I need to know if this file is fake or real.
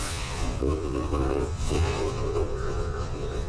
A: fake